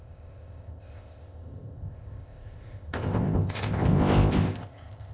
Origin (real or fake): fake